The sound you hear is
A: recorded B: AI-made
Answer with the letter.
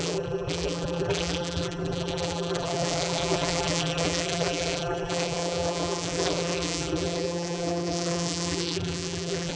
B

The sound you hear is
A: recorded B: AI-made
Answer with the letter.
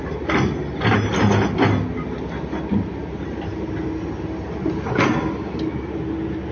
A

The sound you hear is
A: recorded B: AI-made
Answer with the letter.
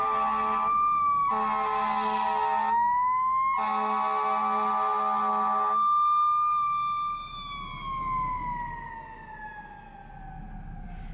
A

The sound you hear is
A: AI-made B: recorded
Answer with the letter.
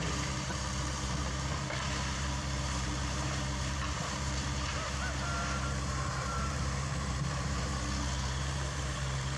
A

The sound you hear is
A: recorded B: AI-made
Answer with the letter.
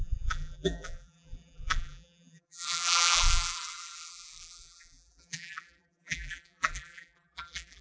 B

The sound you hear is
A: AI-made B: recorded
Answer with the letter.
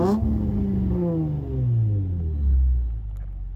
B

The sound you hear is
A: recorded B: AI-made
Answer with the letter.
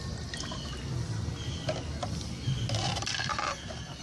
A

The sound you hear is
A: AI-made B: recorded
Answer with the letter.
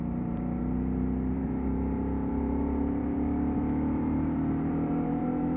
A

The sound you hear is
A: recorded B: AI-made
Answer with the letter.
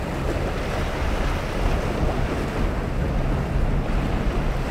A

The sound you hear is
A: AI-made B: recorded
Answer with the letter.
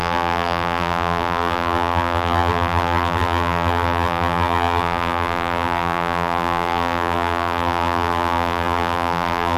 A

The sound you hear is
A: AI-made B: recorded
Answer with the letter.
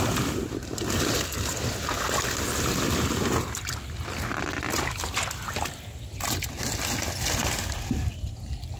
B